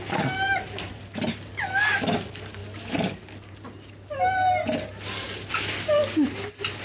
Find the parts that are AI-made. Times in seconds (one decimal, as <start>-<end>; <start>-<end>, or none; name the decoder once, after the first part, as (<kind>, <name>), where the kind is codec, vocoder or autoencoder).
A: none